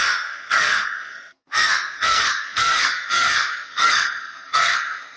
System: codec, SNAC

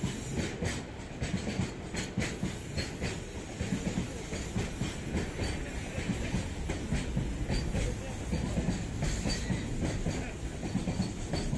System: none